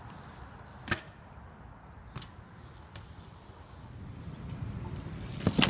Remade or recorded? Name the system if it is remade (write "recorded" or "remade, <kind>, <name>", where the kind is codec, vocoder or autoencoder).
recorded